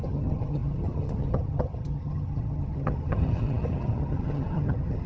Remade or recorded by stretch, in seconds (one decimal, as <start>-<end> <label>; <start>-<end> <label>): 0.0-5.1 remade